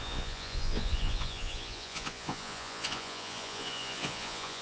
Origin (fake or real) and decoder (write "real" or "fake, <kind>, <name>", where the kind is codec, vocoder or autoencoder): fake, vocoder, Vocos